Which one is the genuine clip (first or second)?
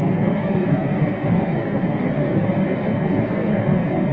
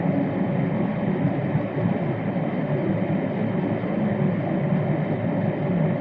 second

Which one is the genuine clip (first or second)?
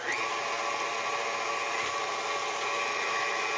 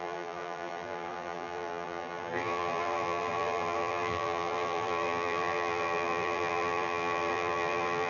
first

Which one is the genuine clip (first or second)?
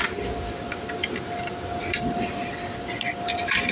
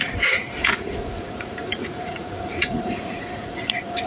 first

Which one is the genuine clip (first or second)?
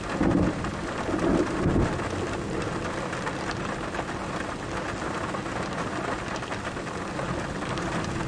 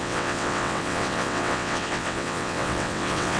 first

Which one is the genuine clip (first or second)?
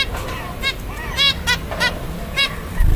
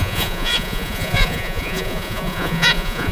first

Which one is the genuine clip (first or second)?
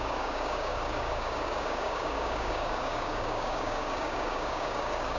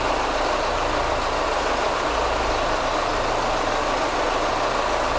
second